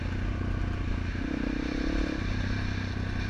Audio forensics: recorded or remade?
recorded